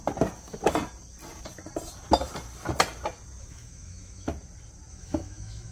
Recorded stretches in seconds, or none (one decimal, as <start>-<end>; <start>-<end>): 0.0-3.4; 4.3-4.9